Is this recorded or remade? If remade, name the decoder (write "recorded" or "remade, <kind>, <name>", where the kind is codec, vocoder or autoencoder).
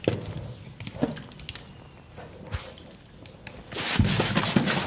recorded